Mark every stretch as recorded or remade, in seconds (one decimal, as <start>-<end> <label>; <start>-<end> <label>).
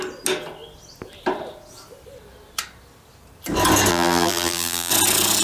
0.0-3.9 recorded; 3.9-4.9 remade; 4.9-5.4 recorded